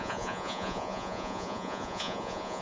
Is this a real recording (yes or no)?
no